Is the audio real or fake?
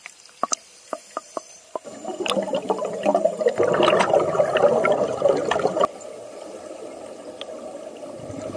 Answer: real